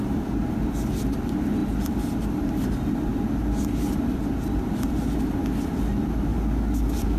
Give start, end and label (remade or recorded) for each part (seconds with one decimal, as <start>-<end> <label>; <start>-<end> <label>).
0.0-6.3 recorded; 6.3-7.2 remade